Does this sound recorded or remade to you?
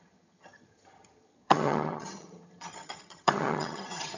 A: remade